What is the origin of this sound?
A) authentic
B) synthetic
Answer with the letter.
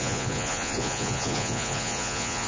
B